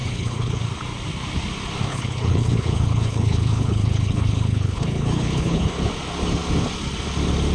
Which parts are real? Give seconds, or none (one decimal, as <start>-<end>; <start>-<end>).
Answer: 0.6-1.9; 5.7-7.5